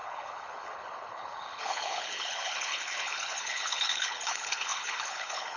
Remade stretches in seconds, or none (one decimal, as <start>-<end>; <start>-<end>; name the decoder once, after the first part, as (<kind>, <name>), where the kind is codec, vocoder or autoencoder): 0.0-5.6 (codec, HILCodec)

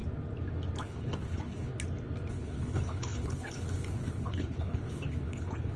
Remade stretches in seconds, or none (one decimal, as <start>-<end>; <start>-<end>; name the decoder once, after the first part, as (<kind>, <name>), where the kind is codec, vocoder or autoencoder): 0.8-1.7 (codec, HILCodec); 2.3-5.8

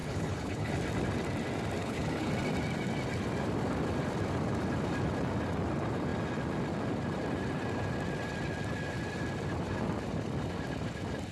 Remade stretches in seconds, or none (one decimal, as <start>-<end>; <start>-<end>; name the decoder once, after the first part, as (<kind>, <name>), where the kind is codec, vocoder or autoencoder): 0.0-0.7 (codec, HILCodec); 1.8-2.3

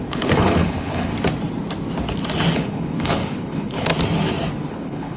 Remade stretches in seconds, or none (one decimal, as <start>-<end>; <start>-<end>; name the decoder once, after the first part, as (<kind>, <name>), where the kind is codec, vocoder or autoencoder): 0.0-1.1 (codec, HILCodec); 2.5-3.9; 4.7-5.2

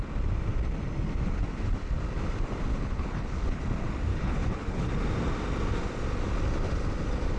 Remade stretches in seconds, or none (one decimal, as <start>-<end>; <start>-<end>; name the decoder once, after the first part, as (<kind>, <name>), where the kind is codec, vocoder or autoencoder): 2.7-3.6 (codec, HILCodec); 4.1-4.9